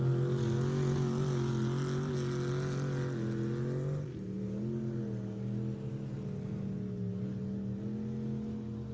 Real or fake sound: real